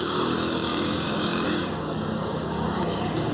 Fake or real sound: fake